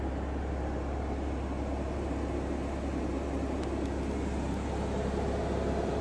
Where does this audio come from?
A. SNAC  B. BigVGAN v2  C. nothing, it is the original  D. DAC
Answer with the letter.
B